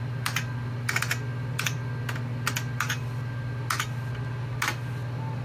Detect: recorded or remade recorded